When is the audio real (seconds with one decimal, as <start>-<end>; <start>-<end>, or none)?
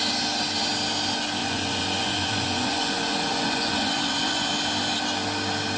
0.0-1.4; 4.5-5.8